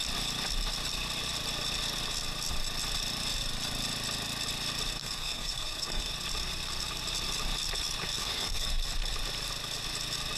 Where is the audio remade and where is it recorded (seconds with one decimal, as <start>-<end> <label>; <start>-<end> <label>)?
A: 0.0-5.0 recorded; 5.0-6.1 remade; 6.1-8.2 recorded; 8.2-8.8 remade; 8.8-10.4 recorded